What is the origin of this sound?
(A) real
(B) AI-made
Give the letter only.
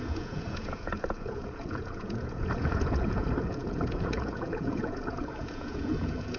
B